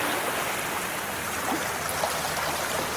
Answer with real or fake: fake